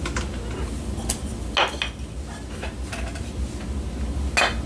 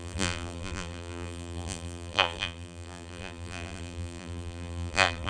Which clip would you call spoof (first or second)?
second